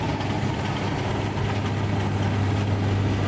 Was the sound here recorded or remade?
recorded